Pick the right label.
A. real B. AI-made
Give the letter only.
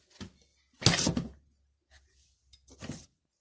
A